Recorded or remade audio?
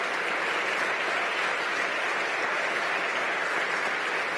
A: recorded